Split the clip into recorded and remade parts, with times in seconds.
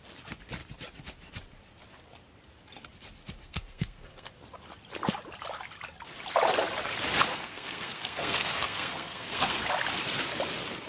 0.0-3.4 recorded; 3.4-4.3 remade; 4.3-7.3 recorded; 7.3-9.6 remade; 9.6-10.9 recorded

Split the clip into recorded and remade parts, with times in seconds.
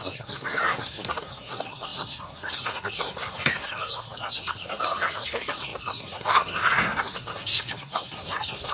0.0-8.7 remade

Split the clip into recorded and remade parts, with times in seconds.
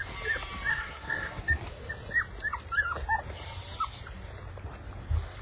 0.0-0.7 recorded; 0.7-1.4 remade; 1.4-5.4 recorded